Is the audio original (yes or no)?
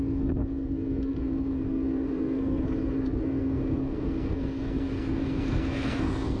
no